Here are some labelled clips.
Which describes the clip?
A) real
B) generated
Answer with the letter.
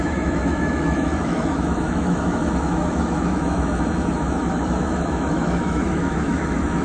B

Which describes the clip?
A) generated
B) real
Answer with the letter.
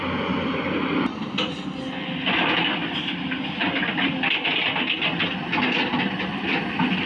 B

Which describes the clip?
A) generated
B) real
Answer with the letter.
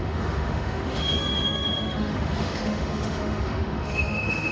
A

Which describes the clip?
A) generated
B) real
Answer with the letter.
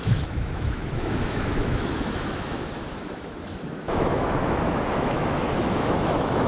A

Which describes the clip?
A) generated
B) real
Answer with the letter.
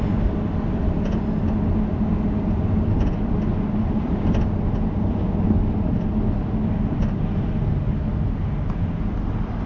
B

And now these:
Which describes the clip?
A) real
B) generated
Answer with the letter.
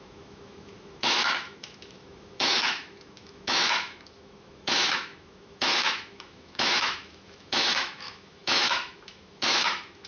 B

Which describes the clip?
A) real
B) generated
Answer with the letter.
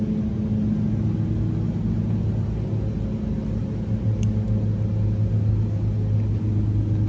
A